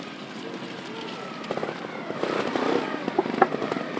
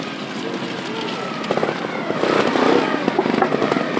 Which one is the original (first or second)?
second